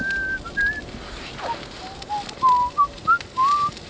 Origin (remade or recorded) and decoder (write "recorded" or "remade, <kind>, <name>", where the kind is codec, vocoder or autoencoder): recorded